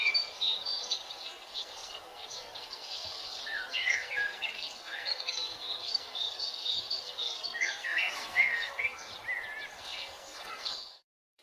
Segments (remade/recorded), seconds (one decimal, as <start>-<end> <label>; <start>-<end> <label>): 0.0-9.1 remade; 9.1-9.7 recorded; 9.7-11.4 remade